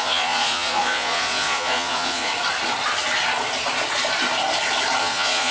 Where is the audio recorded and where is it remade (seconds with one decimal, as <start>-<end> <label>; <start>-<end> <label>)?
0.0-2.3 remade; 2.3-5.0 recorded; 5.0-5.5 remade